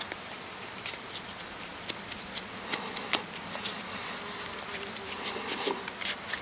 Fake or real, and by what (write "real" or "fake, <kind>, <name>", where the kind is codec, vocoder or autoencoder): real